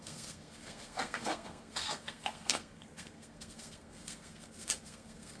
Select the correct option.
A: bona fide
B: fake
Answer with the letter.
B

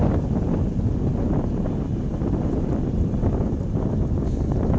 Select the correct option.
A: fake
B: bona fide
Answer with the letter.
B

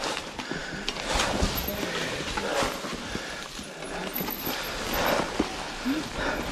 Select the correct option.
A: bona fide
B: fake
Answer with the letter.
A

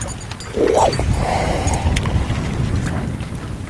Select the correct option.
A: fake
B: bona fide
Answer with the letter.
B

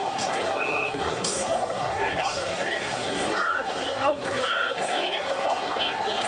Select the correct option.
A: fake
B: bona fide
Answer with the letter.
A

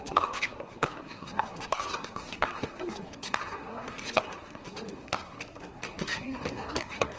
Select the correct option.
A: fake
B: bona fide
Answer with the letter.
A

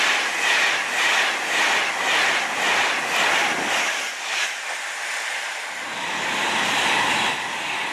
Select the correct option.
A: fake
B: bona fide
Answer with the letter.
B